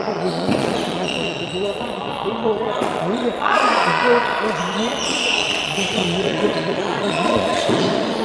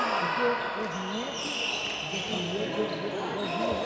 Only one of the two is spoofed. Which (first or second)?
first